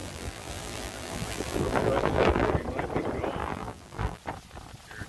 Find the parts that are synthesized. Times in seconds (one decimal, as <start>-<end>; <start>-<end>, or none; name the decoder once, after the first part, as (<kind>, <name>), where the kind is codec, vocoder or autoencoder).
0.0-2.5 (vocoder, BigVGAN v2); 3.4-4.2